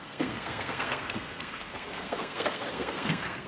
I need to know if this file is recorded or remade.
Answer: remade